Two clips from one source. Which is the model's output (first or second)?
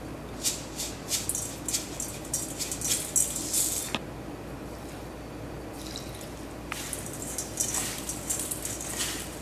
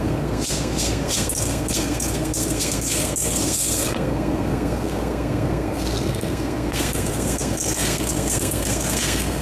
second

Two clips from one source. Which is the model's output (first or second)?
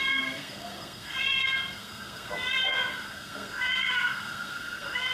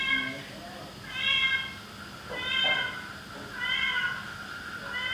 first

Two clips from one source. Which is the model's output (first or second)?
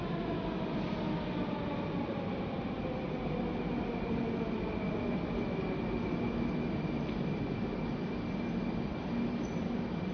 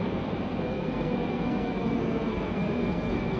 second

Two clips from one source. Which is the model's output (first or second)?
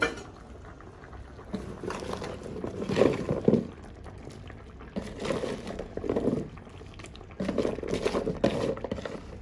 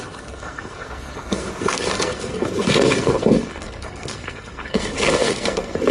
second